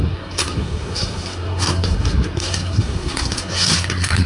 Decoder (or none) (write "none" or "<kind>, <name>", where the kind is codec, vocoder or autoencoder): codec, SNAC